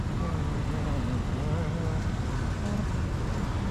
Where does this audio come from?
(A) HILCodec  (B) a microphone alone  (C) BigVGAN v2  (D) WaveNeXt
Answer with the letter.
B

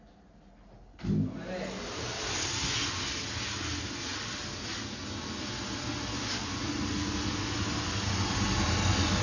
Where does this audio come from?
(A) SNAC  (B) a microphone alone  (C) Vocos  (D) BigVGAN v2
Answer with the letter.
B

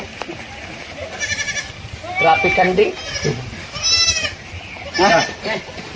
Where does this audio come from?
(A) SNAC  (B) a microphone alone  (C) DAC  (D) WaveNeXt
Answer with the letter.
B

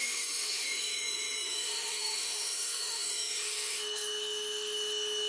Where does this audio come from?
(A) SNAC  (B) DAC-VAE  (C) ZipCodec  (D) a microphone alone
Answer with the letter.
B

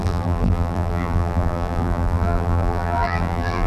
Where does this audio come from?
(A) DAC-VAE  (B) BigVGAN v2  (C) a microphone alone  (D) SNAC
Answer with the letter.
B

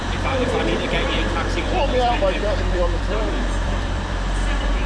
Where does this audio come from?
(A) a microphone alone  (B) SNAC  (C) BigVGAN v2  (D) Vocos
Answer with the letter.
C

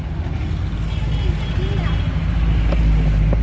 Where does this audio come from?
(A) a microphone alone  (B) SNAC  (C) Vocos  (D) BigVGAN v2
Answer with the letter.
A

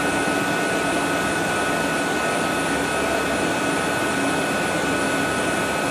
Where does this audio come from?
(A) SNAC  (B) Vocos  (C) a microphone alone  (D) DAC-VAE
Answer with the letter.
C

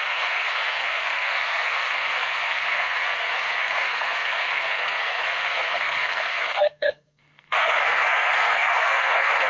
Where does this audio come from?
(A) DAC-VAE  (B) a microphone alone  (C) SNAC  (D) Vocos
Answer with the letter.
C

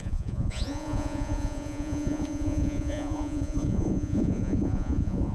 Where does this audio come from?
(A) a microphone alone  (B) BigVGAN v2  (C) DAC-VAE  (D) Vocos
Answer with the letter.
D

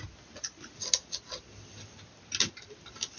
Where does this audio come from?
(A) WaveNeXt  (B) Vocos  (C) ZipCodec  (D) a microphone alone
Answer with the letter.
D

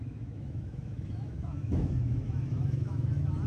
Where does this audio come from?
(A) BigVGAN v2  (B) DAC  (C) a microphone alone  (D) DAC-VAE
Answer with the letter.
D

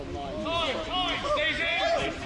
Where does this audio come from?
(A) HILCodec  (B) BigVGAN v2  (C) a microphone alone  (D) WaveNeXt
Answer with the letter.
C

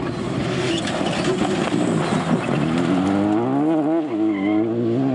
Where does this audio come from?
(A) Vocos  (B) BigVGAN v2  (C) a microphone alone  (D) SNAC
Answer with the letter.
C